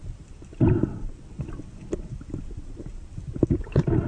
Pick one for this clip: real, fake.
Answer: real